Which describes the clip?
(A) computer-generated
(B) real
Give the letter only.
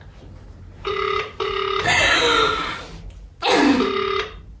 B